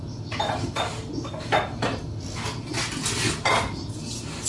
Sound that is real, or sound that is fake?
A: real